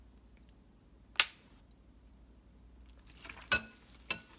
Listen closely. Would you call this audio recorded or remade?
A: recorded